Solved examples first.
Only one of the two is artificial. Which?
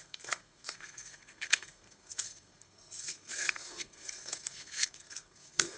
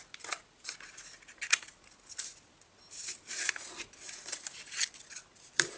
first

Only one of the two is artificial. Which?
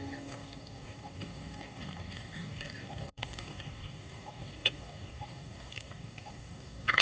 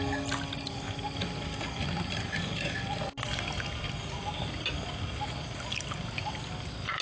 first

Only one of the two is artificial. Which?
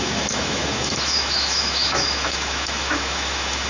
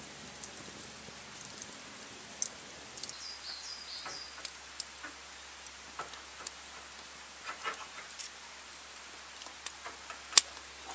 first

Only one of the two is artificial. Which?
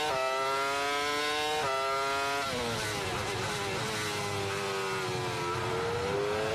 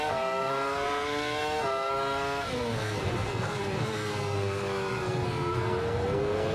second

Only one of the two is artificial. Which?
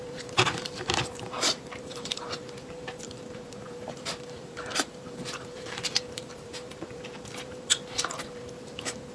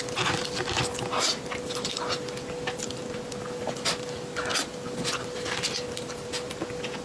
first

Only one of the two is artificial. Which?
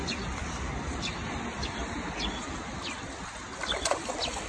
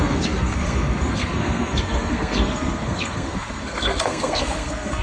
second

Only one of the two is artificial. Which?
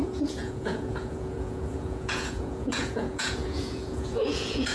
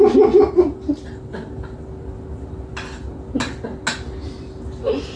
first